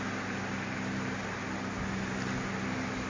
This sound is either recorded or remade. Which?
recorded